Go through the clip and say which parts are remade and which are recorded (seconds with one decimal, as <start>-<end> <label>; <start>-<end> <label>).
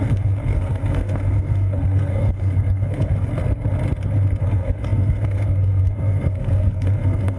0.0-3.3 remade; 3.3-4.4 recorded; 4.4-7.4 remade